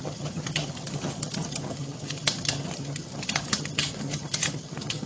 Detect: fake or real fake